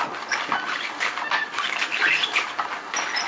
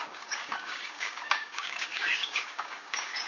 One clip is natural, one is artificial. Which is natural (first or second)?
first